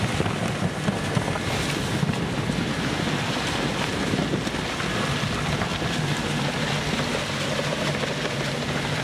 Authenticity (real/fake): real